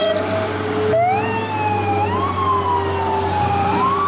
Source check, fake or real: real